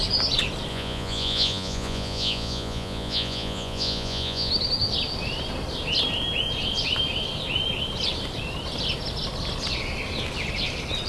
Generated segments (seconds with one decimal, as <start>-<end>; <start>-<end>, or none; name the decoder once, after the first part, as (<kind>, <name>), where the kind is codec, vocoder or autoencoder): 0.7-4.5 (vocoder, Vocos)